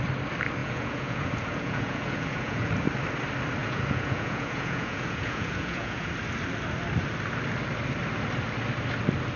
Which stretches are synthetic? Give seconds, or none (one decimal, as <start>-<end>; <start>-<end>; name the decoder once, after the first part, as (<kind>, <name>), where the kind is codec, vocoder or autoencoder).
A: 0.6-2.7 (vocoder, Vocos); 3.6-6.1

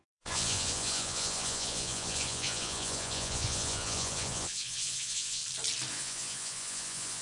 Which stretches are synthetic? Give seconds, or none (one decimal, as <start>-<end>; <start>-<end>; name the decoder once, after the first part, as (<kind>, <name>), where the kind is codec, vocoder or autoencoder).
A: 0.0-5.4 (vocoder, Vocos); 5.9-7.2

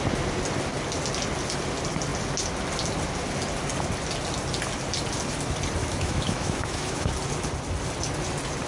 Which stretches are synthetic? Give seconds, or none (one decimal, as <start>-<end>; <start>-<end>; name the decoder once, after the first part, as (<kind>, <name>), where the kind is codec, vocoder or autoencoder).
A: 5.8-7.1 (autoencoder, DAC-VAE)

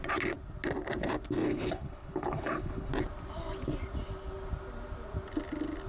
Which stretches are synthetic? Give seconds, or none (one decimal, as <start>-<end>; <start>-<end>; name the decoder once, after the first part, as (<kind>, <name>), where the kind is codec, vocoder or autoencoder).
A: 1.4-2.9 (codec, HILCodec)

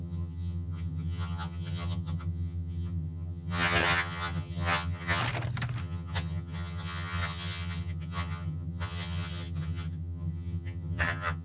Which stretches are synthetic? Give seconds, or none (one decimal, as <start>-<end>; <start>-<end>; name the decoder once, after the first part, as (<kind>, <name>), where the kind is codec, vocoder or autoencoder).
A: 0.0-5.2 (vocoder, HiFi-GAN); 5.8-11.4